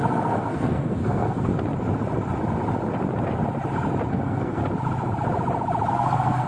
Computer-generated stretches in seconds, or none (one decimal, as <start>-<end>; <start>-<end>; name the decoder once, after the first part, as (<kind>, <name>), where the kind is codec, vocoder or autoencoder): 0.0-1.5 (codec, SNAC); 4.1-4.6; 5.9-6.5